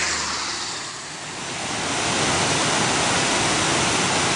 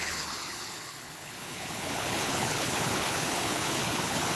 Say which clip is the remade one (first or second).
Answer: second